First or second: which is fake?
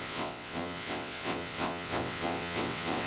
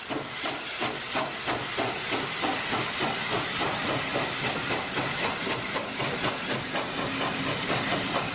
first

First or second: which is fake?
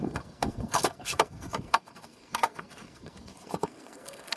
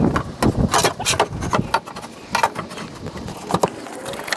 first